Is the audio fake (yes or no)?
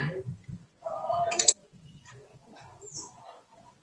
yes